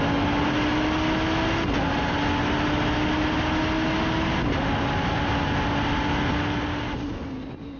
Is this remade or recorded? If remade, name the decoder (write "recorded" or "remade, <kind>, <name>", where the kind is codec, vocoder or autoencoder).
recorded